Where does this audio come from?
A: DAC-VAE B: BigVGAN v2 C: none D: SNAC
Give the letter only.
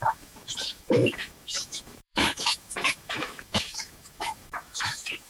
A